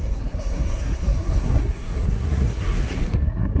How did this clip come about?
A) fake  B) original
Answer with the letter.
A